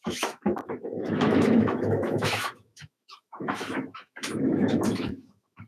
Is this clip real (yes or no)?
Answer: no